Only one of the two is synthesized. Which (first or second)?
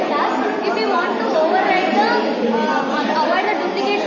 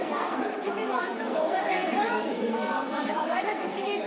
second